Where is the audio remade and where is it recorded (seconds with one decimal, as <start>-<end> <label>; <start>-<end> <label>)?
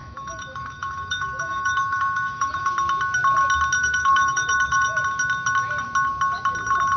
0.0-2.7 remade; 2.7-3.8 recorded; 3.8-5.0 remade; 5.0-7.0 recorded